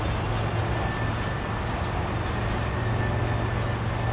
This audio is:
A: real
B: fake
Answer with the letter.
A